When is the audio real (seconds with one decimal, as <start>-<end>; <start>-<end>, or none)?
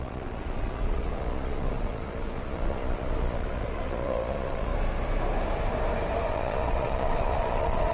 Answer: 4.7-6.3